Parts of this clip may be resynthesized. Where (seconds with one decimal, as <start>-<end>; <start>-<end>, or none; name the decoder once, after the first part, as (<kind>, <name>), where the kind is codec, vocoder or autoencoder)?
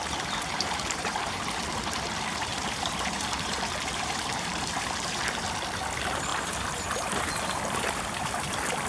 0.0-1.6 (vocoder, BigVGAN v2); 2.5-5.5; 6.3-8.5